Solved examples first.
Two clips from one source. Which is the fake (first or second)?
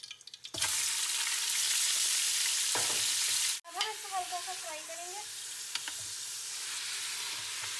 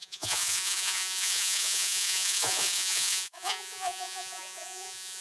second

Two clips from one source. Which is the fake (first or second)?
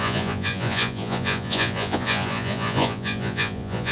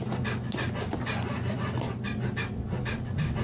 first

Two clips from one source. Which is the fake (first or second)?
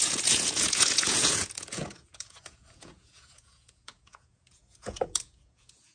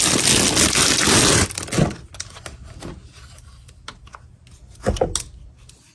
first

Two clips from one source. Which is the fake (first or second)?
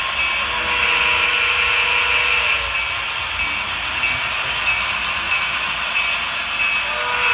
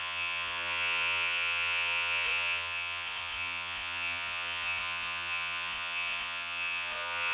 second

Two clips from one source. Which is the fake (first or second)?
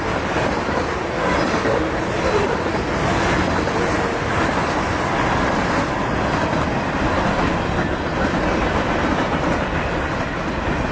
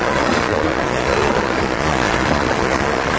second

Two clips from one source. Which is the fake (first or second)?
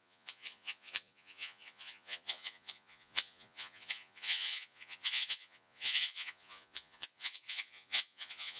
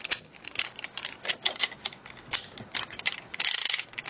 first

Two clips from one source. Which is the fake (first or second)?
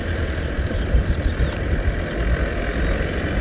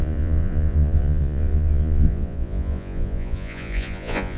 second